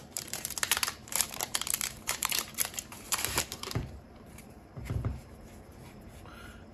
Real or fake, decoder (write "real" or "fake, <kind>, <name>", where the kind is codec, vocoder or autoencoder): fake, vocoder, BigVGAN v2